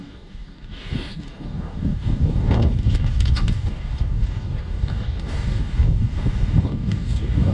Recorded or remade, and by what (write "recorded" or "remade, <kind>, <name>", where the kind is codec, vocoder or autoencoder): remade, codec, DAC